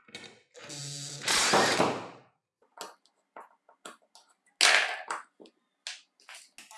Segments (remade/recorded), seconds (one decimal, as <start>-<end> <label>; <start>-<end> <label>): 0.0-6.8 recorded